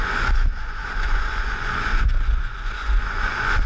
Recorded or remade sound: remade